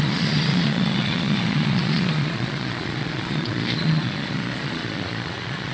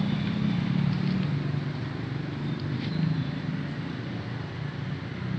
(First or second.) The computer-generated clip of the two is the first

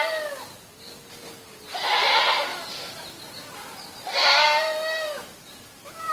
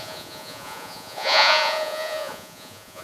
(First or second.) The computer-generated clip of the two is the second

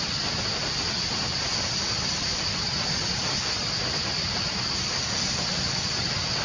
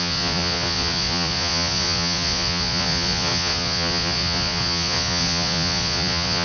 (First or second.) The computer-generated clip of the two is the second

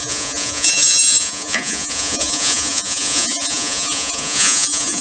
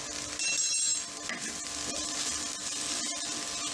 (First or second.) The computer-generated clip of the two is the first